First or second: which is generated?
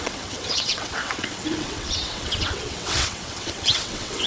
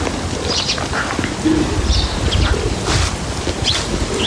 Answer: first